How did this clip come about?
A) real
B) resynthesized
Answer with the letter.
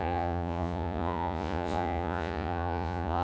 B